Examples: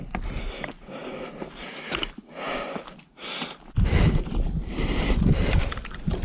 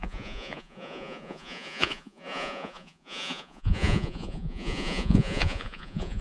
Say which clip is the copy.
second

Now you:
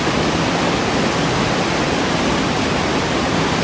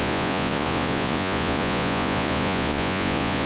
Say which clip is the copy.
second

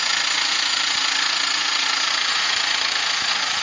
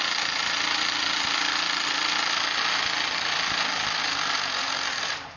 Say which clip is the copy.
first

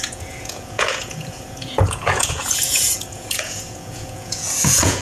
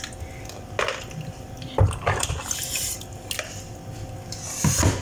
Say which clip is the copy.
first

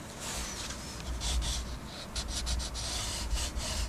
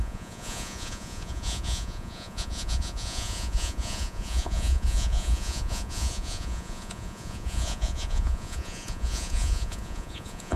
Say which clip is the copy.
second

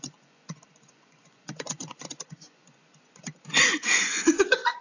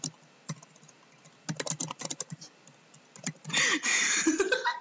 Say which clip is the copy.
first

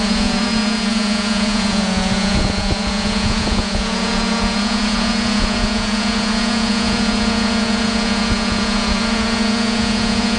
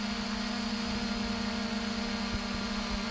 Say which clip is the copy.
first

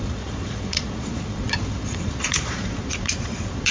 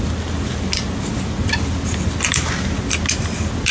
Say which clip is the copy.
first